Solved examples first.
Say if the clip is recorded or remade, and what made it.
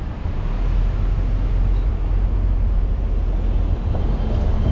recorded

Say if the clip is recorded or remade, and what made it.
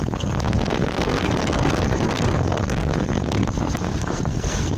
remade, codec, SNAC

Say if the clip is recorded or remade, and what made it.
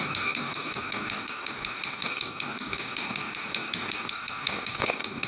remade, codec, DAC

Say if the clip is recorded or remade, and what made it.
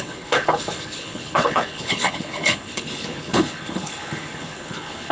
remade, codec, HILCodec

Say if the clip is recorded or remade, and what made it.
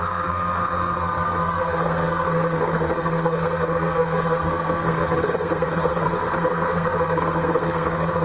remade, codec, SNAC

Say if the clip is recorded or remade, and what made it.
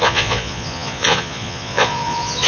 remade, vocoder, Vocos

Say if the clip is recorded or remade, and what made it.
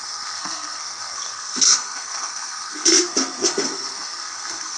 remade, codec, SNAC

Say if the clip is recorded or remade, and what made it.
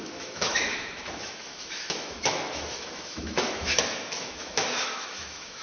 remade, autoencoder, DAC-VAE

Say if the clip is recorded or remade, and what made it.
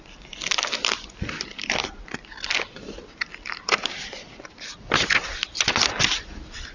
recorded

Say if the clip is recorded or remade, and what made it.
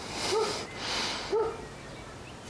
recorded